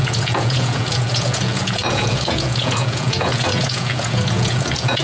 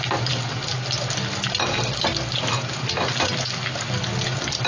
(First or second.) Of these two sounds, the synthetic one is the first